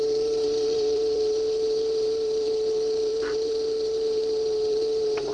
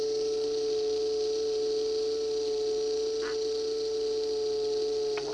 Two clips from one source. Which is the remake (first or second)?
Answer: first